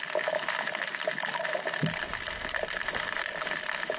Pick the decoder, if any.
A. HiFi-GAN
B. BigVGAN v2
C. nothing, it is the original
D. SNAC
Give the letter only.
C